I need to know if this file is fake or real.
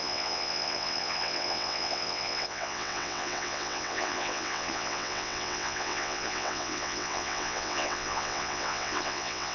fake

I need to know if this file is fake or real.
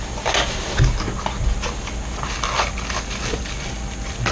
real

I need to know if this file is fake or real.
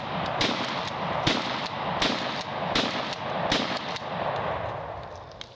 real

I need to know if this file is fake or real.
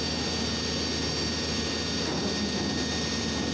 real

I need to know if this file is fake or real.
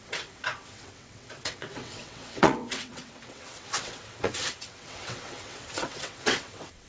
fake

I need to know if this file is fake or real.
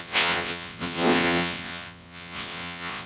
fake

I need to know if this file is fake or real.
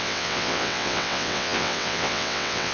fake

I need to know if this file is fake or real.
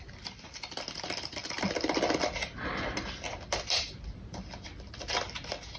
real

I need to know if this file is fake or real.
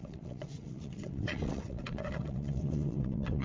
fake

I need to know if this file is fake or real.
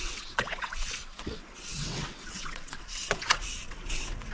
fake